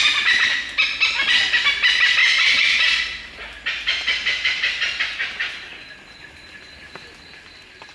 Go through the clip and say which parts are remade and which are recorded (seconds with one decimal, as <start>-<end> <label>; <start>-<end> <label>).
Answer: 0.0-7.9 recorded